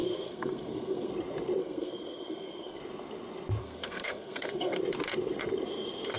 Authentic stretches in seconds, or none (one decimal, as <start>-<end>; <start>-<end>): 1.1-1.6; 2.8-3.6; 4.8-6.2